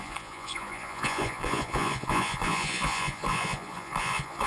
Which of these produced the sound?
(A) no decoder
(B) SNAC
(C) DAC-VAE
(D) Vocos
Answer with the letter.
D